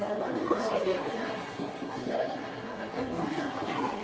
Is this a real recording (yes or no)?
no